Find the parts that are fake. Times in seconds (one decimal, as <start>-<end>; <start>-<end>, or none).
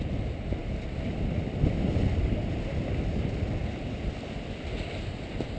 none